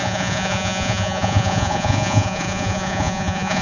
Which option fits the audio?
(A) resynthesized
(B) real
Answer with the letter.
A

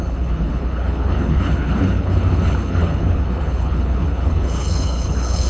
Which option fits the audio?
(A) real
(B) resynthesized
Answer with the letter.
B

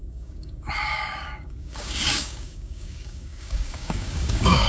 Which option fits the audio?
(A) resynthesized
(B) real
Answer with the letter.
A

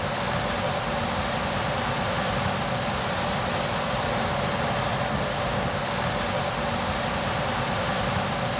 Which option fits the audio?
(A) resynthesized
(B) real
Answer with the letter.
B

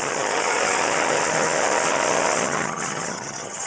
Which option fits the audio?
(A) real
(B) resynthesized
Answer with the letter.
B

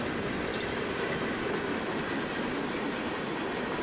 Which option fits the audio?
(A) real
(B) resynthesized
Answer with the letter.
B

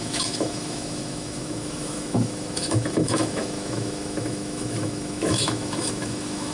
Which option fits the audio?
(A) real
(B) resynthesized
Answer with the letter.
B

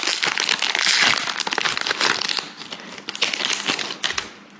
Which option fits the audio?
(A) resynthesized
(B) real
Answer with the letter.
B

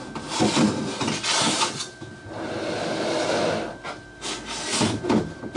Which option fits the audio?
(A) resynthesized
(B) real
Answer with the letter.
B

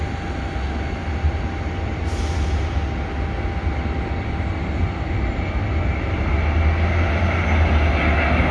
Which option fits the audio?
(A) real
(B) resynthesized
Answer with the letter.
A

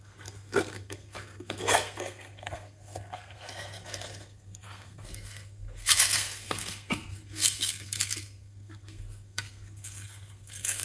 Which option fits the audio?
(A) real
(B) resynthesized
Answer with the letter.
B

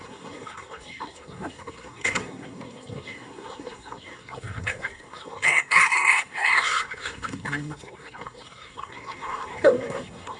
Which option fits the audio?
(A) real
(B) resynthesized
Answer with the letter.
B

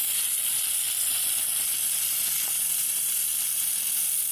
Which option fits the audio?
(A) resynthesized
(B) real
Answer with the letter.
A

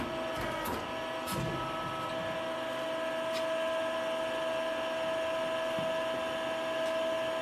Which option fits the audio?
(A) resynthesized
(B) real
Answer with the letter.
B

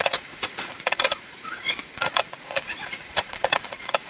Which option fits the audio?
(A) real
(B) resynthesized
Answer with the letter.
B